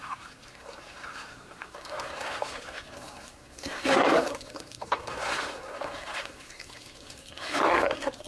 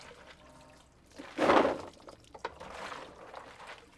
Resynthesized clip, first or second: first